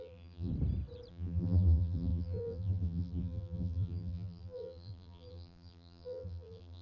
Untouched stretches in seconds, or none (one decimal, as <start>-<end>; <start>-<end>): 0.5-1.1